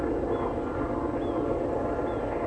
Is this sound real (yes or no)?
yes